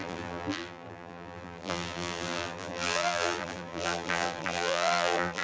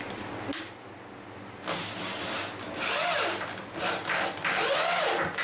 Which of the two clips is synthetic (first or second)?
first